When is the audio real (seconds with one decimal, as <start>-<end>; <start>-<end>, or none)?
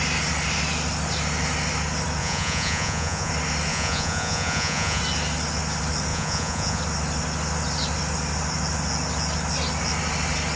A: 0.0-2.2; 3.3-3.7; 5.0-6.1; 6.8-10.6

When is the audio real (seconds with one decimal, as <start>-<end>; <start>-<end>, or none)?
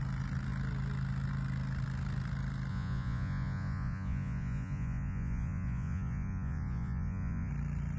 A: 0.0-2.7; 7.5-8.0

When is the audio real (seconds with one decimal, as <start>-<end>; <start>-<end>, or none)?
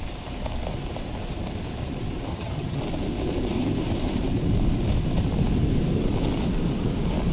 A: 0.0-2.3; 2.8-7.3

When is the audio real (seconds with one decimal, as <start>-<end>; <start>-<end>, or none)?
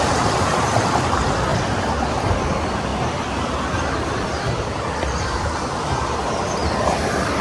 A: 0.0-7.4